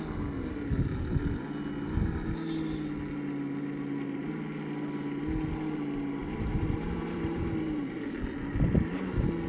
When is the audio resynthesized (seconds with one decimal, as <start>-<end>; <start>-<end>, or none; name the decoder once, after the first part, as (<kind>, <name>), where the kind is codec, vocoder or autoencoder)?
6.2-8.2 (vocoder, BigVGAN v2)